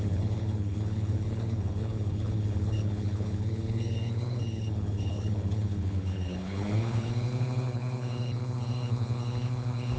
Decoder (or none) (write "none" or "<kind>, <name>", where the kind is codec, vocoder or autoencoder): codec, HILCodec